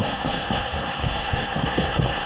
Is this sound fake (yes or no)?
yes